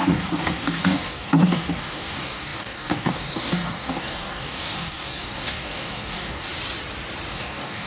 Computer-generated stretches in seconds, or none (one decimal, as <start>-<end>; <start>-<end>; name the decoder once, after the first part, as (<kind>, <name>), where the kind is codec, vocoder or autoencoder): 0.0-6.5 (codec, DAC); 7.3-7.9